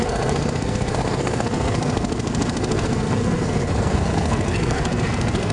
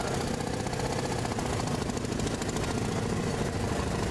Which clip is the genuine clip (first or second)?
second